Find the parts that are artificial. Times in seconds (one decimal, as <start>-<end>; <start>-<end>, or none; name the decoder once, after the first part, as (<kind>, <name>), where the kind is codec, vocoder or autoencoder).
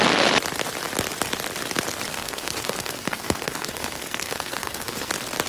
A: 2.1-5.1 (codec, SNAC)